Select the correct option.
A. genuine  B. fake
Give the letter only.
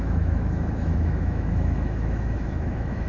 B